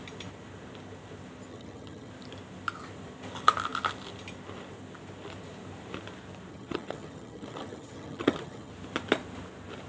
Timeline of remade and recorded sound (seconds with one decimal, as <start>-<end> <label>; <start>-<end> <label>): 0.0-1.5 recorded; 1.5-2.1 remade; 2.1-6.5 recorded; 6.5-8.7 remade; 8.7-9.9 recorded